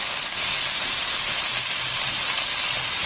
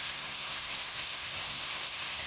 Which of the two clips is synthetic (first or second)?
second